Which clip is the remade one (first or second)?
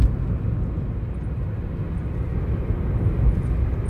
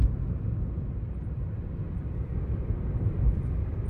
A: second